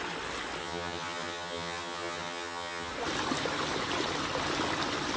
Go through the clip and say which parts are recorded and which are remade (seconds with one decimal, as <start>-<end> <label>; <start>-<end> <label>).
0.0-0.6 recorded; 0.6-2.9 remade; 2.9-5.2 recorded